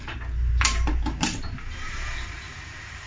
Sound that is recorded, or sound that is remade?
remade